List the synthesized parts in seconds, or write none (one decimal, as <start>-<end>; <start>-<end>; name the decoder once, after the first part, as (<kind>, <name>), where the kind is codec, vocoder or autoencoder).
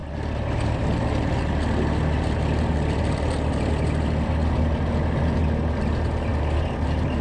none